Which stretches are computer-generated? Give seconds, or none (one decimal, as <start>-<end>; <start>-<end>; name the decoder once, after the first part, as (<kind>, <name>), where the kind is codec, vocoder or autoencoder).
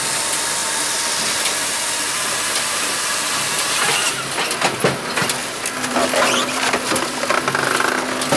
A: 0.6-4.1 (vocoder, BigVGAN v2); 5.4-7.2